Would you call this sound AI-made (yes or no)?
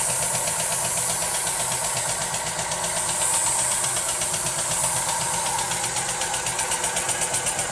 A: no